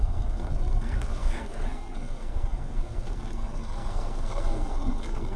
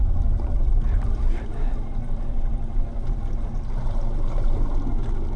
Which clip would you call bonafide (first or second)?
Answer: second